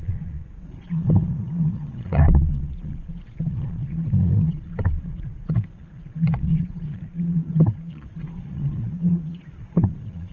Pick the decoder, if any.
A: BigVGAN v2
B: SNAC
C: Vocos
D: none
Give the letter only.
C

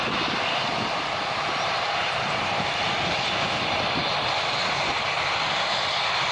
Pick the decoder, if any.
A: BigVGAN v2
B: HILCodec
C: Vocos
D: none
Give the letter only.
A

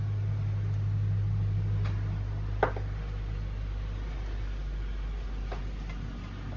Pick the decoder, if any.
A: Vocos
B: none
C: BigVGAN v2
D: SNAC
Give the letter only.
B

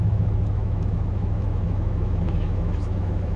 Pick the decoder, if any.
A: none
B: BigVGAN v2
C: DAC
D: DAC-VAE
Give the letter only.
D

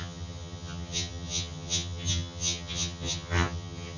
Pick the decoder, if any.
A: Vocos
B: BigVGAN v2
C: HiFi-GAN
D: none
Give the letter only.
C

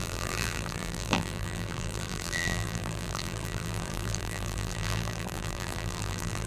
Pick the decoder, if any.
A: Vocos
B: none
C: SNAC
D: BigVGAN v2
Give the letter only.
D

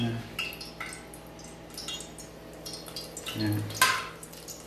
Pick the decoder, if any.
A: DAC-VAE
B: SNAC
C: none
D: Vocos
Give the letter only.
C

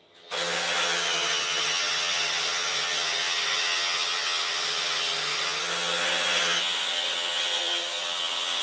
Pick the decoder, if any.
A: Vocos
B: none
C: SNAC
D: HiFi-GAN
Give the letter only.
D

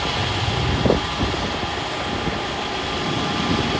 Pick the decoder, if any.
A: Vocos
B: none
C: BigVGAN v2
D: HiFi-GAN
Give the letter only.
B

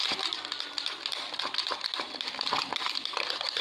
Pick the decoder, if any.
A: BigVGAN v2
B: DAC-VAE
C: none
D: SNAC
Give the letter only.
C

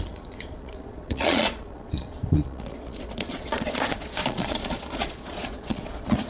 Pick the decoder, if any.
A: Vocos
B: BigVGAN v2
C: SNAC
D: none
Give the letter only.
A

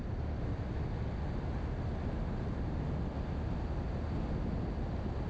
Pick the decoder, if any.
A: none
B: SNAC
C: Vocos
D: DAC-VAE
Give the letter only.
A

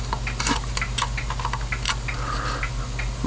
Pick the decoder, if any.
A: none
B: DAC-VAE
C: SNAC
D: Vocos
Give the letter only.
A